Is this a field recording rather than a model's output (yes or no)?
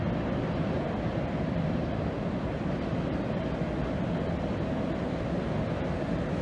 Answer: yes